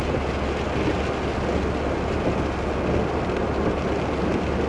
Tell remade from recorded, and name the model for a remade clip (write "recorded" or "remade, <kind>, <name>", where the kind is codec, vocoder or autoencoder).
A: recorded